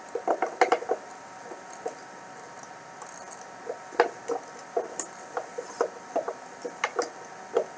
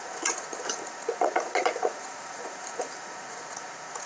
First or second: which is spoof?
second